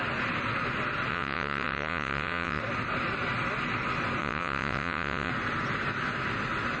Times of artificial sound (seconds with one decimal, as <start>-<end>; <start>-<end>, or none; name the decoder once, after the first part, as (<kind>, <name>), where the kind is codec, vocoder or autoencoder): 1.1-2.6 (vocoder, WaveNeXt); 4.2-5.3